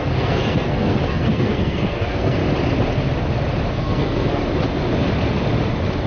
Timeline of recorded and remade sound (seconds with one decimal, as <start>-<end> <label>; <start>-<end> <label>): 0.0-2.4 remade; 2.4-3.7 recorded; 3.7-4.4 remade; 4.4-6.1 recorded